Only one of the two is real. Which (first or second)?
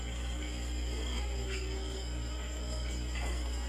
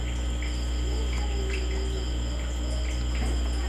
second